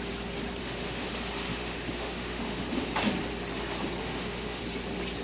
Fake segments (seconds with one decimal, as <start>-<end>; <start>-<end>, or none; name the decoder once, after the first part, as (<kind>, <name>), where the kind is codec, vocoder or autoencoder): 0.6-1.1 (autoencoder, DAC-VAE); 1.5-2.9; 4.0-4.6